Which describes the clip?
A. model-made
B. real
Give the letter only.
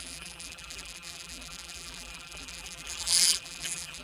A